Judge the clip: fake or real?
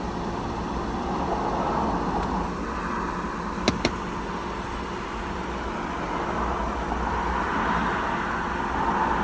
real